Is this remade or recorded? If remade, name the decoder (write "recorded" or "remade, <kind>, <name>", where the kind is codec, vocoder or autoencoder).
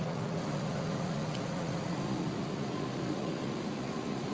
remade, vocoder, Vocos